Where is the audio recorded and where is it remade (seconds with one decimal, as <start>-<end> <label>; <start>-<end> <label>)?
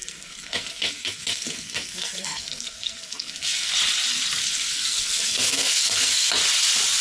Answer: 0.0-3.7 remade; 3.7-4.4 recorded; 4.4-6.3 remade; 6.3-7.0 recorded